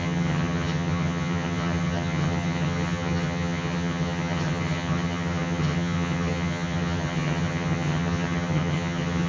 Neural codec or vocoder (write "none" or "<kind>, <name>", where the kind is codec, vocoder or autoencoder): vocoder, HiFi-GAN